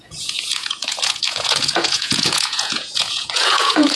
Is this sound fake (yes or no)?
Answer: yes